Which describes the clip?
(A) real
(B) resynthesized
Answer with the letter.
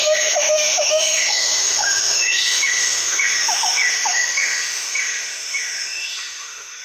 B